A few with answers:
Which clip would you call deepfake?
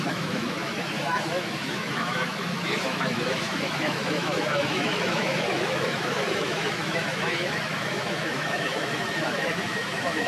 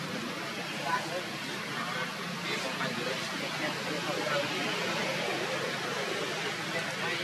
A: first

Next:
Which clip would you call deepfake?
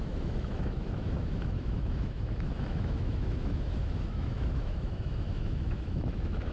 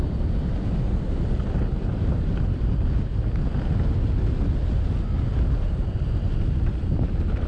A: first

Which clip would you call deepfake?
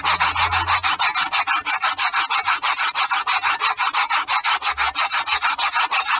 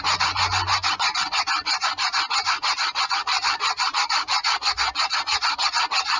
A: second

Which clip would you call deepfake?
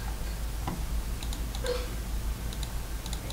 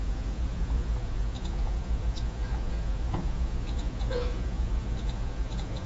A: second